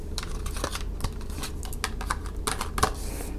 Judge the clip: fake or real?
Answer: real